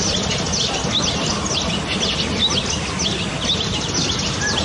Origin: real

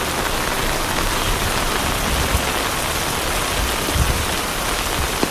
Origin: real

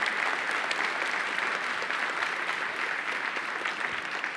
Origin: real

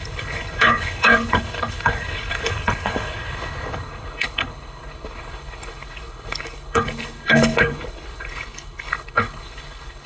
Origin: fake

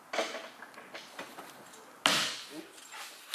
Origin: real